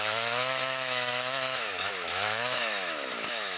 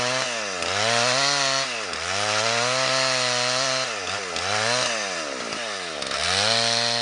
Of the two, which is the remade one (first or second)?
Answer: first